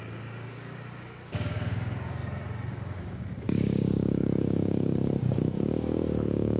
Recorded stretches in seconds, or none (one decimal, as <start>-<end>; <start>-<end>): 2.2-2.7